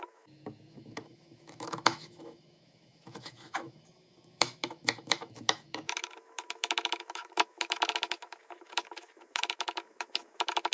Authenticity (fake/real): fake